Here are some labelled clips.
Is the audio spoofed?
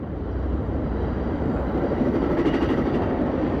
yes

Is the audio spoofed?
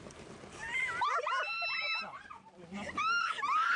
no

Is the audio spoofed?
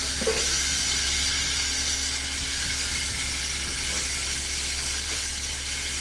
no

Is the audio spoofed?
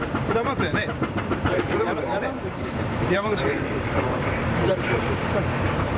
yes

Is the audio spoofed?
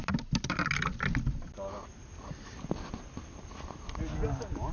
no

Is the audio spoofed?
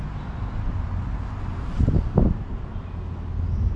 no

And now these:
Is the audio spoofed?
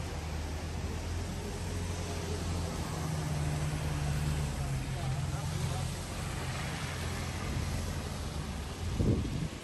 no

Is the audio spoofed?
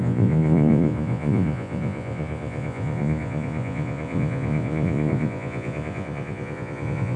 yes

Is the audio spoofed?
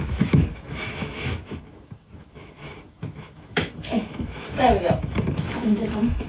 yes